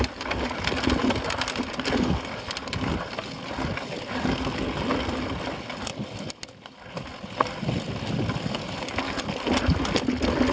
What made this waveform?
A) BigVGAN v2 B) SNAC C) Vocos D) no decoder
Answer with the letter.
D